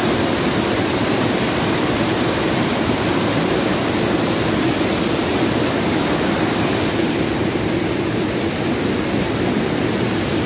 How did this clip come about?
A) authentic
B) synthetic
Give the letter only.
A